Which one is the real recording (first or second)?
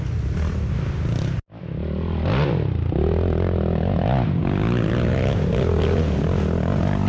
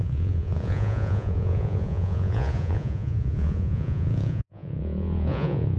first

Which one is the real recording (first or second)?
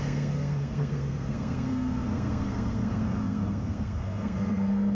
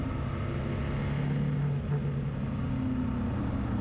second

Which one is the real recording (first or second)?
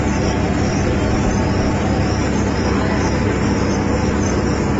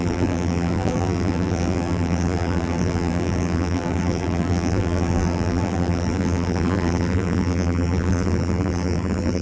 first